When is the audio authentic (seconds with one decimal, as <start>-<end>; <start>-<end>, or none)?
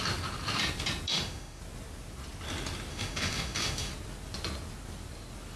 0.0-1.1; 1.6-2.9; 3.9-5.6